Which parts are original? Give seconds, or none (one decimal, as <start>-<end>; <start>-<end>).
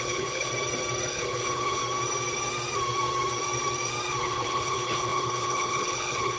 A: 0.5-1.1; 1.8-4.2